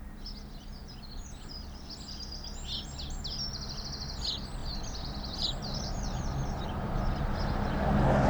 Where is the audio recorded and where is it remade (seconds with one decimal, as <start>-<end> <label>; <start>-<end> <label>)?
0.0-0.8 recorded; 0.8-1.6 remade; 1.6-4.6 recorded; 4.6-7.7 remade; 7.7-8.3 recorded